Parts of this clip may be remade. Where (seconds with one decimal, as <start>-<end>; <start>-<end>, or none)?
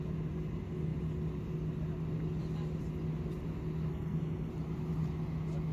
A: 3.9-4.5